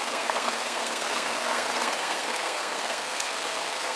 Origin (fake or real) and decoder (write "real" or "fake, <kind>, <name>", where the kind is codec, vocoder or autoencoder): fake, codec, SNAC